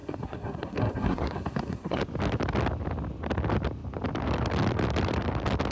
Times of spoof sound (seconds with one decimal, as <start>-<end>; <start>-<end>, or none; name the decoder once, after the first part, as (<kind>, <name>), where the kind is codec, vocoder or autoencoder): 0.0-2.0 (codec, SNAC)

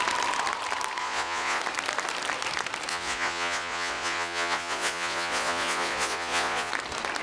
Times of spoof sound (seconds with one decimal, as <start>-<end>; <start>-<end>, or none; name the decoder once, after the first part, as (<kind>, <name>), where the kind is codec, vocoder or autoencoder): 1.0-1.6 (vocoder, Vocos); 2.9-6.7

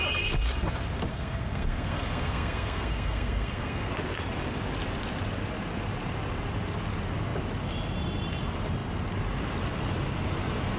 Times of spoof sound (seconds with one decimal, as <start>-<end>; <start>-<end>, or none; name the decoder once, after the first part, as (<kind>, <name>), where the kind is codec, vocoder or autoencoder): 1.1-3.9 (codec, SNAC)